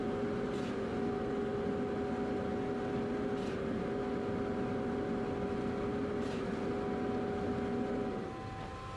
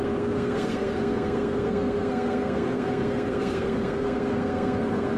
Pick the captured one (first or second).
first